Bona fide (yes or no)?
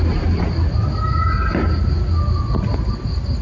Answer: yes